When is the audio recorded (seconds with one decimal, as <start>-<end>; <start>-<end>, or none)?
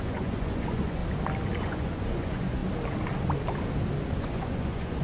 1.0-1.6; 2.6-4.2